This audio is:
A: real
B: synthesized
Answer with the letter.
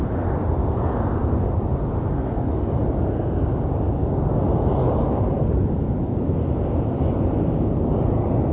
A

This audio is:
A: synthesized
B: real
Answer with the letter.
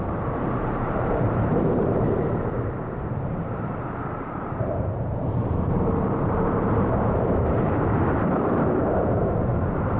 A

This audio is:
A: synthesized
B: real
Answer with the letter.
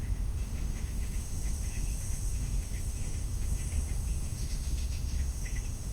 A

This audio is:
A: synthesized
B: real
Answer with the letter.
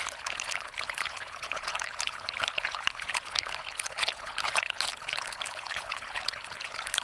A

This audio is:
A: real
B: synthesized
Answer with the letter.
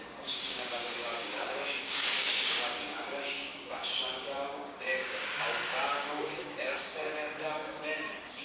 B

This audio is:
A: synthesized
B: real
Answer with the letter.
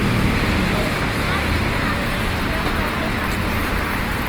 B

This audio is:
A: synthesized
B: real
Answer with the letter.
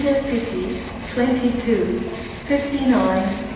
B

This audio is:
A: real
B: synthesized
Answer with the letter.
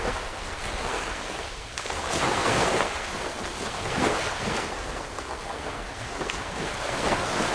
B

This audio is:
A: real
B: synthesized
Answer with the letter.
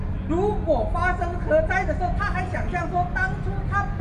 A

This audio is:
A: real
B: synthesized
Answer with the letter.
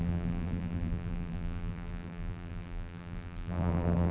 B